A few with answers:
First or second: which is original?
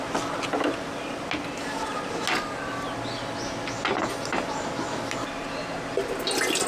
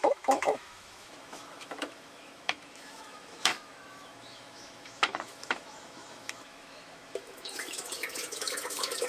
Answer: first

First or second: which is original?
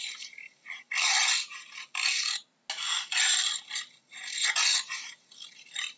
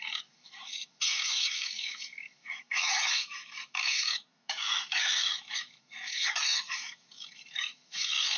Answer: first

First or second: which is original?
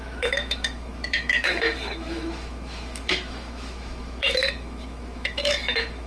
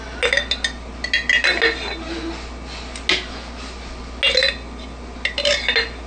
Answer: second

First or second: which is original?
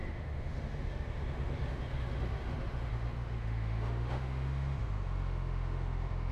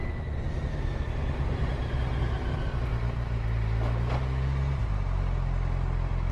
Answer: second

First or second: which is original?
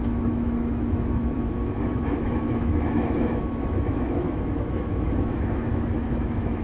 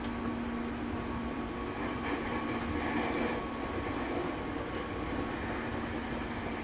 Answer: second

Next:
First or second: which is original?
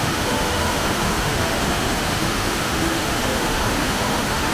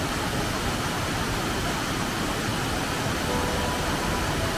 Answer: second